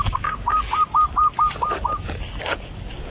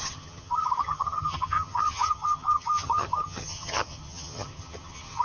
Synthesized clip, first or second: second